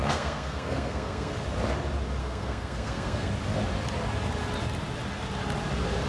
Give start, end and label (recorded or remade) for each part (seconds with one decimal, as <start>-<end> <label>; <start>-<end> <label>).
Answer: 0.0-1.3 remade; 1.3-2.2 recorded; 2.2-3.3 remade; 3.3-6.1 recorded